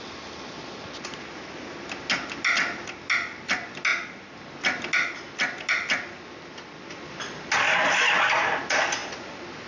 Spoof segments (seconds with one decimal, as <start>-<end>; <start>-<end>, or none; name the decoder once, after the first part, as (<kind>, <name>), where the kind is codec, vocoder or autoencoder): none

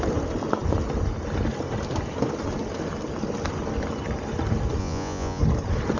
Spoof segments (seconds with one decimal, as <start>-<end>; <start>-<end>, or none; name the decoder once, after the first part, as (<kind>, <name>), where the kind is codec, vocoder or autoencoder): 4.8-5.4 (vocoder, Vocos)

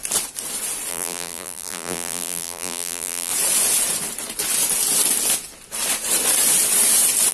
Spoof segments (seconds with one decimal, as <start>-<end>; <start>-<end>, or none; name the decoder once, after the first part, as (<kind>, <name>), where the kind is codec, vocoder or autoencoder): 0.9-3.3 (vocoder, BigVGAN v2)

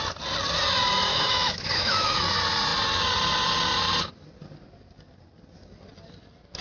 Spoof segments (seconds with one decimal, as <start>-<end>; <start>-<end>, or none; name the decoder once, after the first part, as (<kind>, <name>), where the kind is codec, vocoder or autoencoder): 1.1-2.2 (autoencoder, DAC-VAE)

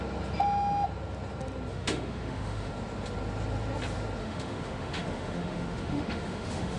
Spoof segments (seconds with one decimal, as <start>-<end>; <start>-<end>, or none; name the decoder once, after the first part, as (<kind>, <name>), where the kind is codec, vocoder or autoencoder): 1.7-2.7 (autoencoder, DAC-VAE); 4.2-6.8